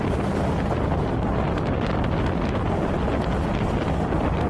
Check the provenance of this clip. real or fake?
real